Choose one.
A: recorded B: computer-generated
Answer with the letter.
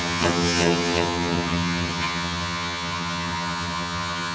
B